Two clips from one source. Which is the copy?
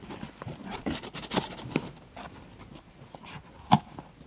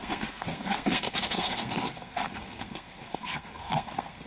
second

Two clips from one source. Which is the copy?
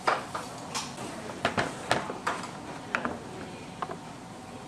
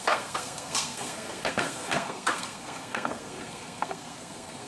second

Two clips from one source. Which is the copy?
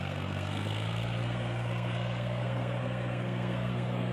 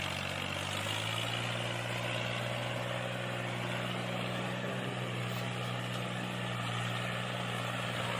first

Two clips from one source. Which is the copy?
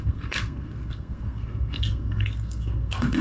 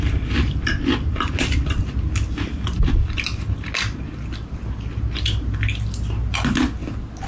first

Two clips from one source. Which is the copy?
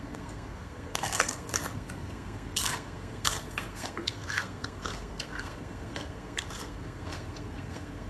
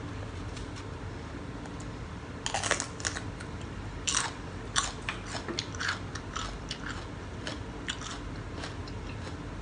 first